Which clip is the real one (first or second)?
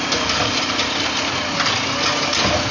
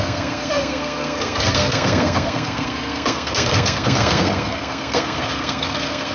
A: first